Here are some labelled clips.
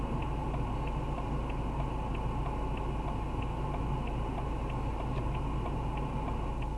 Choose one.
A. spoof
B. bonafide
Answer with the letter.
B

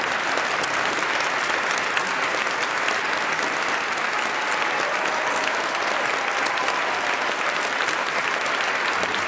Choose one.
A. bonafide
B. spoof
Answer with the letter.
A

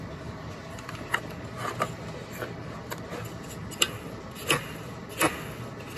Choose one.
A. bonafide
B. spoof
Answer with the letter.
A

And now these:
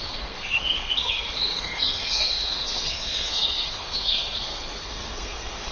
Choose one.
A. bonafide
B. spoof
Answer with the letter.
B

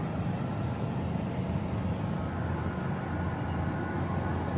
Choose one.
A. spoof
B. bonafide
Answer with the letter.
B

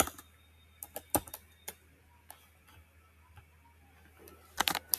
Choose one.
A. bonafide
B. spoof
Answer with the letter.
A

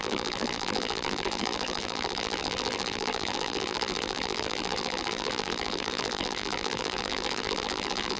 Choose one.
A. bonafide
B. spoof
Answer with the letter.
B